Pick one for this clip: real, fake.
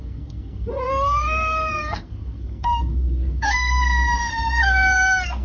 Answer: fake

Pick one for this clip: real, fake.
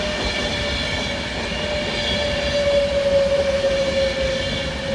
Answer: real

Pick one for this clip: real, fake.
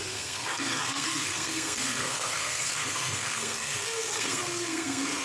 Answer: fake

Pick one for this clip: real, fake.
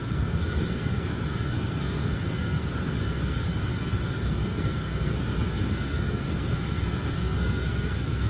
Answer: fake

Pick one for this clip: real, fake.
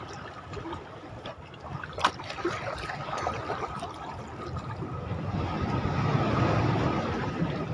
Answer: real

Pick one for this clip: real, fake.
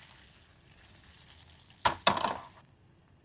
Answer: real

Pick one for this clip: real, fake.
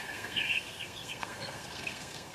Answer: fake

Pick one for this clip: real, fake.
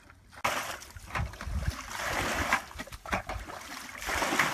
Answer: real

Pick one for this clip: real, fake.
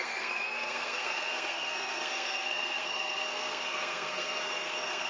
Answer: fake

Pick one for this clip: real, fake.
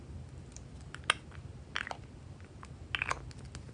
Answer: real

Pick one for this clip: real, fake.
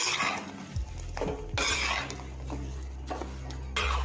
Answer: real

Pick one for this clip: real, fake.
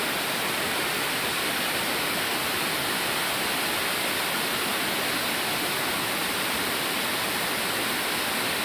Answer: real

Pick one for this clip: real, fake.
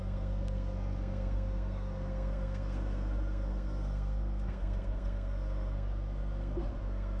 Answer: fake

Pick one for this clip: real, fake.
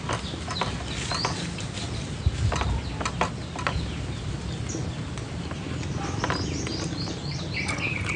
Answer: real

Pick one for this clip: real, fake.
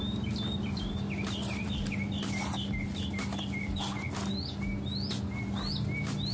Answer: real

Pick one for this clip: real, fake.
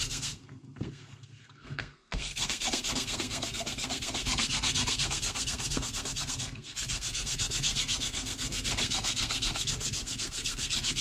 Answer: fake